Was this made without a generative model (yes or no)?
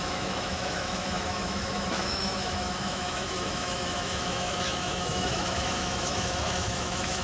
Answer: no